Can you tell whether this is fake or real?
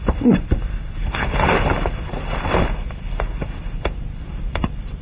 fake